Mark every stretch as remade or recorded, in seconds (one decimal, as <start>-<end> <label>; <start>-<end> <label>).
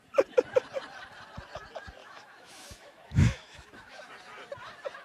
0.0-2.0 recorded; 2.0-4.1 remade; 4.1-5.0 recorded